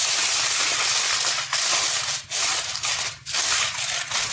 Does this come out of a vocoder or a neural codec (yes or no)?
no